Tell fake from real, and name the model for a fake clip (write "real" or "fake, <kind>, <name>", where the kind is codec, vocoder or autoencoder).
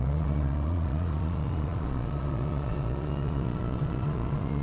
fake, vocoder, Vocos